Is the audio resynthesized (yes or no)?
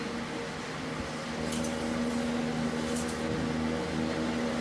no